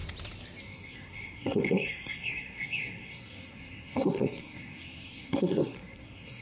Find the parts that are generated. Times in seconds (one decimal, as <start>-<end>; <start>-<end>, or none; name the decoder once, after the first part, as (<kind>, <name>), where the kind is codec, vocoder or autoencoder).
0.6-6.4 (codec, SNAC)